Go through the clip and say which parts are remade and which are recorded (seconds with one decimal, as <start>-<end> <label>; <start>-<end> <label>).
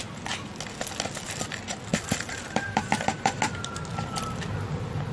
0.0-1.9 recorded; 1.9-3.4 remade; 3.4-3.9 recorded; 3.9-4.4 remade; 4.4-5.1 recorded